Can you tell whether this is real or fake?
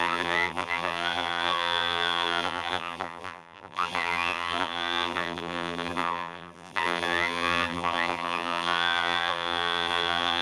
fake